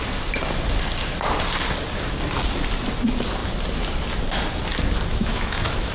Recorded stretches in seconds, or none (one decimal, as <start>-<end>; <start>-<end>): 0.0-5.1